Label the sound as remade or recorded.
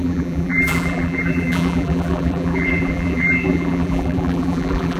remade